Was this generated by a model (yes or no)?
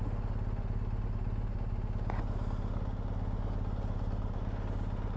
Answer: no